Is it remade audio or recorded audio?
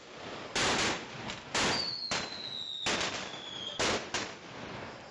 recorded